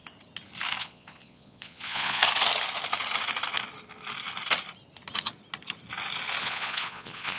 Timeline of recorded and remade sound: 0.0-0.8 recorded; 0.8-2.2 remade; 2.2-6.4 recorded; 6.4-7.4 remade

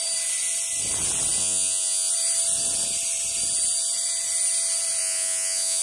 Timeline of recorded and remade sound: 0.0-1.4 recorded; 1.4-2.1 remade; 2.1-5.0 recorded; 5.0-5.8 remade